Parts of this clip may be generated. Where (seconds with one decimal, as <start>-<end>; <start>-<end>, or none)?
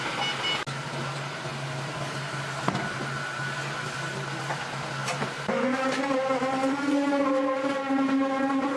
5.0-5.5